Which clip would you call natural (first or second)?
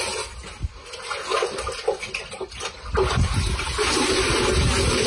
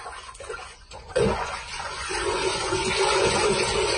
first